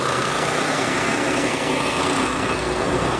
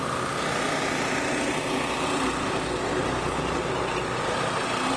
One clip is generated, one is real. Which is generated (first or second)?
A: first